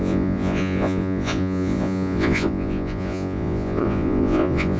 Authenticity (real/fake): fake